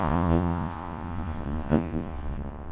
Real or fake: fake